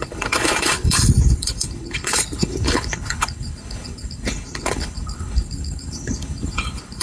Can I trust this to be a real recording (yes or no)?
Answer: no